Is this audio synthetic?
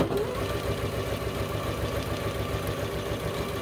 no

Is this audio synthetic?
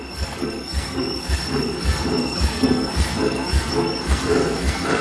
yes